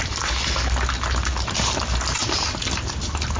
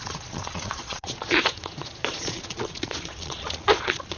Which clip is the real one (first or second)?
first